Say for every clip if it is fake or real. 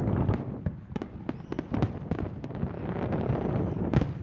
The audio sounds real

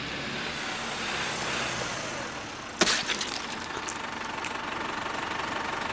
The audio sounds real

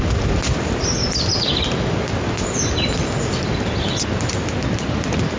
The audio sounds real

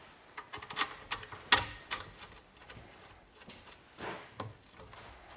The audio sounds real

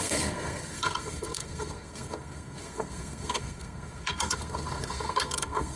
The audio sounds fake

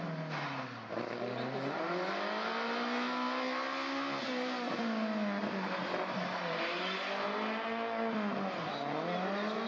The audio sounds real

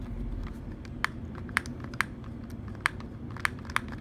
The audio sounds real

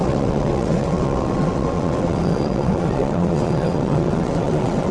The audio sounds fake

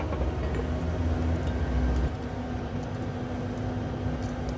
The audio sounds real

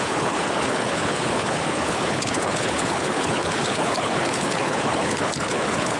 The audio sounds fake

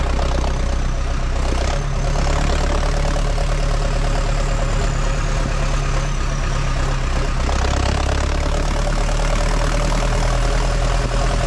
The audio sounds real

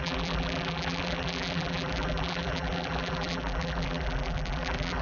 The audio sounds fake